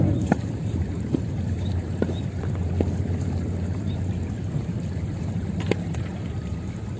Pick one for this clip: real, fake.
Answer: fake